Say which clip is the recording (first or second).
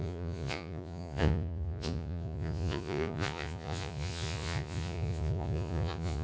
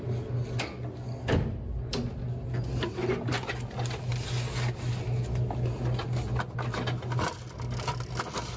second